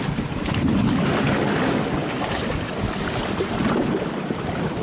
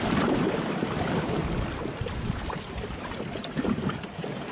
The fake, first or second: second